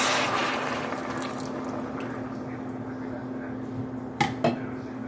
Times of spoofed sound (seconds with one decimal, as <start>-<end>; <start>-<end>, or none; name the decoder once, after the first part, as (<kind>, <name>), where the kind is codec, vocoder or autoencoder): none